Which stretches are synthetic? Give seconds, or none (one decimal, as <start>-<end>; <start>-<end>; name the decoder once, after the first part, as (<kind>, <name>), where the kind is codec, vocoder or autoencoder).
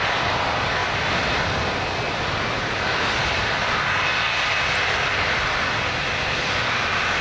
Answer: none